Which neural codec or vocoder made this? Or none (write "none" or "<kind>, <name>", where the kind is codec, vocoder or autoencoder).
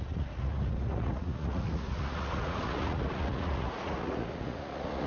vocoder, Vocos